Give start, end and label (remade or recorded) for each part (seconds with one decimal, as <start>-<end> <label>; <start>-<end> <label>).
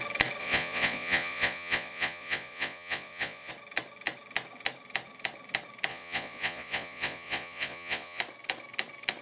0.0-0.4 recorded; 0.4-3.5 remade; 3.5-5.9 recorded; 5.9-8.2 remade; 8.2-9.2 recorded